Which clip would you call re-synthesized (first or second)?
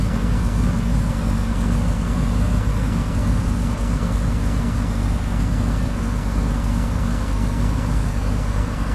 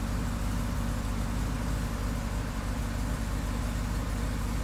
first